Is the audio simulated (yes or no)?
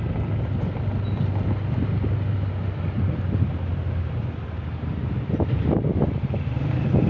no